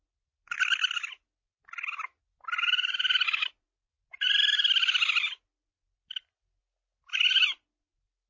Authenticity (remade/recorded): recorded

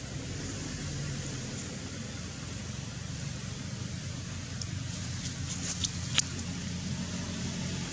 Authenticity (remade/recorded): recorded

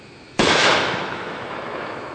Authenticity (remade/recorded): remade